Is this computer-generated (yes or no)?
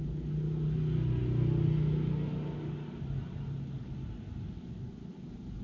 no